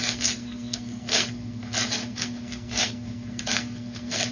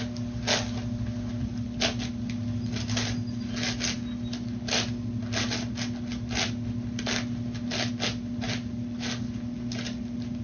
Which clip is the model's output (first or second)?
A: first